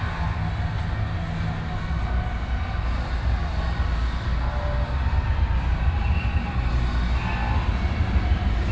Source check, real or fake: real